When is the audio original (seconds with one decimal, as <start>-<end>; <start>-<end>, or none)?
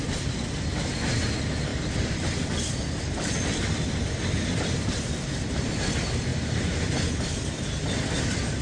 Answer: 0.0-1.7; 5.8-8.6